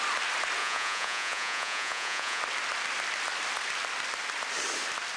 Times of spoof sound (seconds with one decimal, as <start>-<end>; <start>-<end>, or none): 0.6-2.4